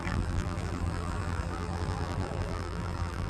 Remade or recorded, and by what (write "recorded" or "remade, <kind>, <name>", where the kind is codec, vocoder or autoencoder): remade, vocoder, BigVGAN v2